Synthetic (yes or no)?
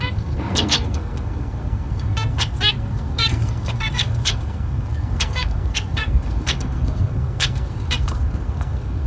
yes